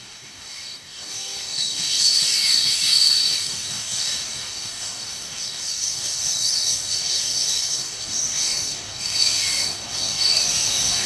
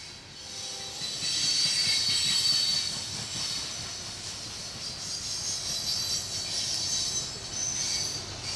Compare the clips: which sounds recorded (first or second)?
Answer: second